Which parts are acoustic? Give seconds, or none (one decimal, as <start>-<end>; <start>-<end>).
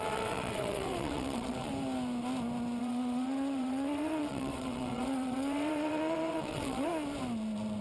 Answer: 1.7-2.8; 6.9-7.8